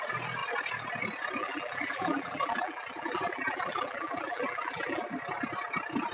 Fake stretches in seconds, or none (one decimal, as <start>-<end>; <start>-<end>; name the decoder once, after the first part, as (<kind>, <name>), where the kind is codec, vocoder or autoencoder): 1.4-5.0 (vocoder, BigVGAN v2)